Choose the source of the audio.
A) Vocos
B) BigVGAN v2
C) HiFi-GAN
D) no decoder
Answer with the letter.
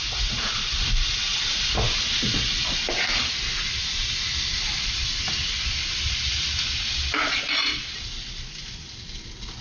D